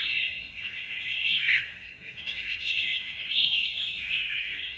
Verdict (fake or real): fake